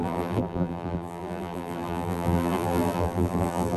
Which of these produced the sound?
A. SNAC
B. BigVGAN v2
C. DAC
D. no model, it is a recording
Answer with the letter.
B